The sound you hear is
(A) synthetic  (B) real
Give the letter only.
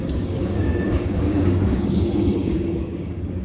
A